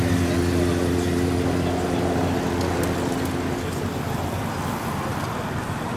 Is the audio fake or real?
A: real